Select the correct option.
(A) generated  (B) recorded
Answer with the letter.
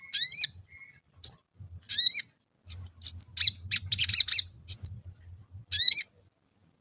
B